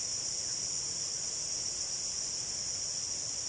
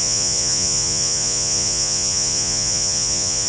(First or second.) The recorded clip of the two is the first